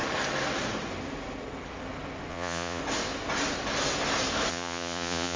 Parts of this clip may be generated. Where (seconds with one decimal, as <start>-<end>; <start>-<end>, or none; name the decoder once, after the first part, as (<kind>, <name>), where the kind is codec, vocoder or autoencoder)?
2.3-2.8 (vocoder, Vocos); 4.5-5.4

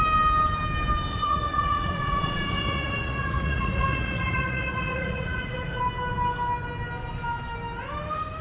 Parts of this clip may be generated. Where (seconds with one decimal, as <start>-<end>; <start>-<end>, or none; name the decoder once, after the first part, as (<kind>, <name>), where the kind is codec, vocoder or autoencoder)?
1.1-5.8 (vocoder, Vocos)